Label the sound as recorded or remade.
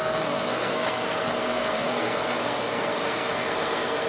remade